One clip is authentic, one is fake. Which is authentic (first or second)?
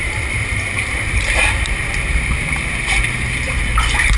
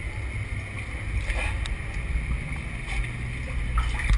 second